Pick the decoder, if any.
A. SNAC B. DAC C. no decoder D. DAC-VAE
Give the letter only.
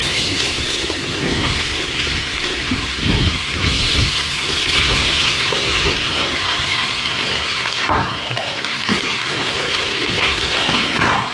A